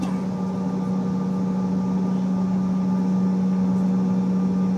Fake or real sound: real